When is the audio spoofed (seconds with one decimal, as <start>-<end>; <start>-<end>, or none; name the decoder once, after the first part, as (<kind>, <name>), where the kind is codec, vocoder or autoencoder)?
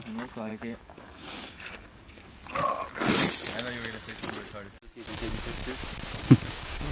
0.0-2.4 (codec, DAC); 5.1-5.6; 6.2-6.9